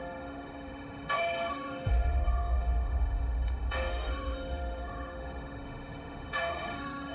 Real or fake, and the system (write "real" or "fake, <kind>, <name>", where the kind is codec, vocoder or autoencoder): fake, autoencoder, DAC-VAE